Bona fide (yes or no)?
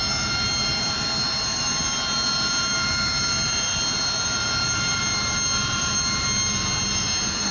no